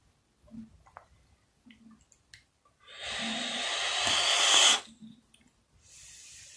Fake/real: real